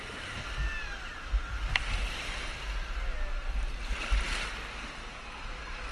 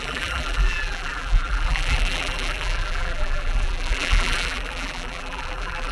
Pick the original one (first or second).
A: first